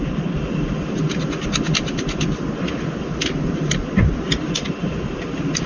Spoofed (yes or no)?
no